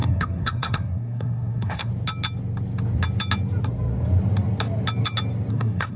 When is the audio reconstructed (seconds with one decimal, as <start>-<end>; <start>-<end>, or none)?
0.0-1.9; 5.5-6.0